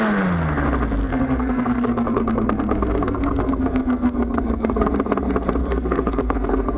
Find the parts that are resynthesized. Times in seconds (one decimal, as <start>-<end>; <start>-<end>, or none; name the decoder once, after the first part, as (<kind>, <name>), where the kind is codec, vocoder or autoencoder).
1.0-4.9 (codec, SNAC); 5.6-6.8